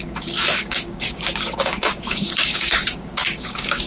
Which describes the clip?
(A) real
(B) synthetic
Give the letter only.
B